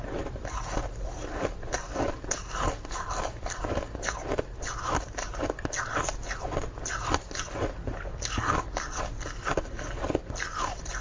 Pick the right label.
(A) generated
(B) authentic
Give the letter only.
B